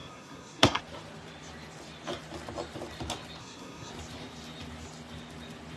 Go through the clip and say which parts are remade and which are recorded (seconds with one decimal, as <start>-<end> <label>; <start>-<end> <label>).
0.0-0.8 remade; 0.8-3.4 recorded; 3.4-3.9 remade; 3.9-5.8 recorded